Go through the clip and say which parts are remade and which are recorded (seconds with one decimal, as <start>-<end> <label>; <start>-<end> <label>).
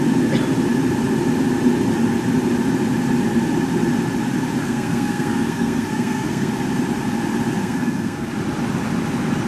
0.0-4.6 recorded; 4.6-6.5 remade; 6.5-7.6 recorded; 7.6-8.3 remade; 8.3-9.5 recorded